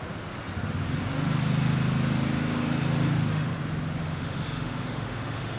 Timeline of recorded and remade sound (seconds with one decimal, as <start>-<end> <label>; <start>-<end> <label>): 0.0-3.1 recorded; 3.1-3.6 remade; 3.6-4.0 recorded; 4.0-5.6 remade

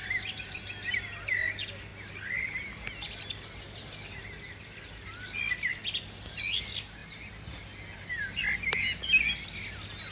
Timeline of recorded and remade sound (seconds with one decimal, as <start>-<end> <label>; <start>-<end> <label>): 0.0-10.1 recorded

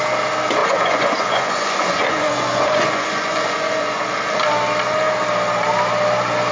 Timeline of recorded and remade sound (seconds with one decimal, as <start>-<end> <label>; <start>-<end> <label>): 0.0-0.6 recorded; 0.6-4.0 remade; 4.0-6.5 recorded

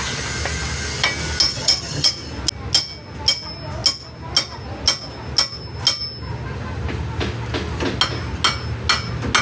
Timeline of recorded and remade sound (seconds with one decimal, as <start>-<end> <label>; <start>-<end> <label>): 0.0-1.5 recorded; 1.5-2.1 remade; 2.1-9.4 recorded